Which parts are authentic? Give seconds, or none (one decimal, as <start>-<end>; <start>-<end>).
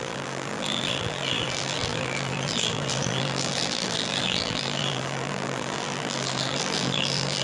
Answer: none